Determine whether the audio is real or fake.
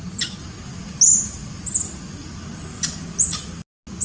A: real